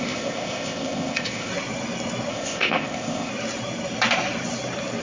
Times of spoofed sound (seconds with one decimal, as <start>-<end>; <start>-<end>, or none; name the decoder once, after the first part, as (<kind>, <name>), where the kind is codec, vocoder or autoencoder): 0.0-1.5 (codec, ZipCodec); 2.3-3.3